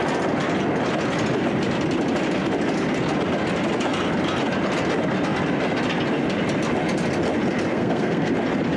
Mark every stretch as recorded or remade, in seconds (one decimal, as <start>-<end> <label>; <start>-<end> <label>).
0.0-7.7 recorded; 7.7-8.3 remade; 8.3-8.8 recorded